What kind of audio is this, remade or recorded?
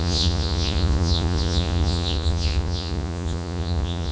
remade